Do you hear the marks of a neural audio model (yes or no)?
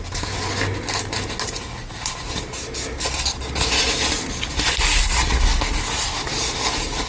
no